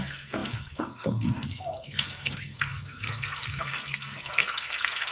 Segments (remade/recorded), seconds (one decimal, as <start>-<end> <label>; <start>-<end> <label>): 0.0-5.1 remade